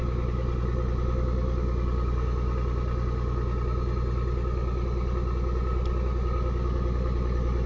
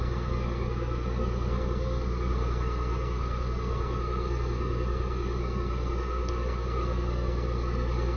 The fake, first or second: second